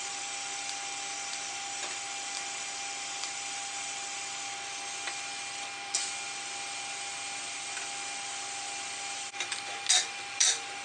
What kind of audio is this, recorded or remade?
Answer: recorded